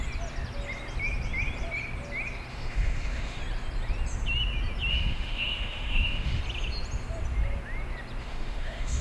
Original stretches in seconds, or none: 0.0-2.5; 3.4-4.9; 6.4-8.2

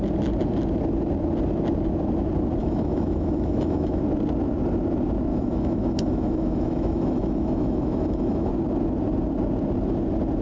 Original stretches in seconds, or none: 0.0-2.6; 4.0-5.3; 8.5-10.4

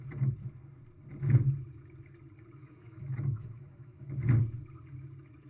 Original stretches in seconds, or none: 0.0-2.6; 4.1-5.5

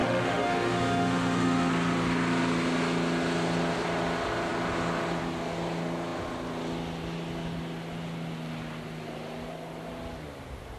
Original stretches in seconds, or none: 1.7-10.8

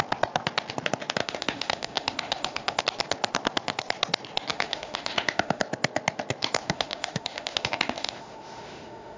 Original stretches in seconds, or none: 0.0-1.2; 2.8-4.5; 5.6-6.6